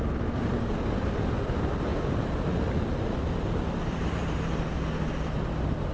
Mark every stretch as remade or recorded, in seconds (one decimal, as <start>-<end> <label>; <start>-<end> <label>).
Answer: 0.0-5.9 recorded